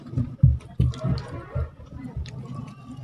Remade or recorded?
recorded